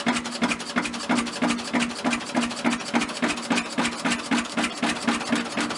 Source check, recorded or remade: recorded